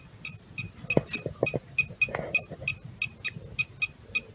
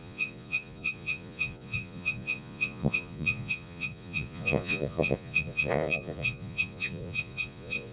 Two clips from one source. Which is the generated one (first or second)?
second